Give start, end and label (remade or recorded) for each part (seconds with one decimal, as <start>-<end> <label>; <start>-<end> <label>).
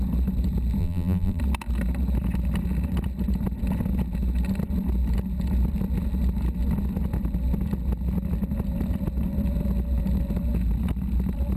0.0-0.8 recorded; 0.8-1.4 remade; 1.4-11.6 recorded